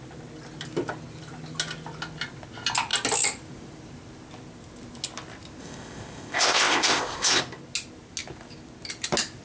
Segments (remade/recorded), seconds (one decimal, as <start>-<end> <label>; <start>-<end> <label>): 0.0-5.6 recorded; 5.6-7.4 remade; 7.4-9.4 recorded